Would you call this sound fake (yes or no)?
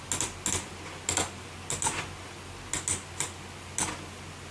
no